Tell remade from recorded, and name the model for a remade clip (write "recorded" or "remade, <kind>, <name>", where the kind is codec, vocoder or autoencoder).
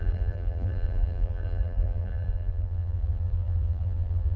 remade, vocoder, BigVGAN v2